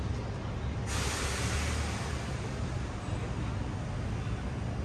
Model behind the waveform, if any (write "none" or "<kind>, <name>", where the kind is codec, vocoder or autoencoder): none